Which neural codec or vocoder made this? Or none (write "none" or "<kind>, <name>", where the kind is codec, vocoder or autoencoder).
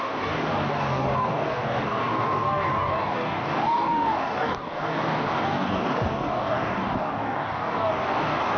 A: codec, DAC